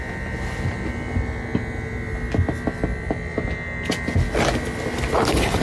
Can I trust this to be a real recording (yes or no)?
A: yes